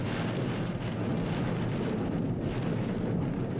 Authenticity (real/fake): real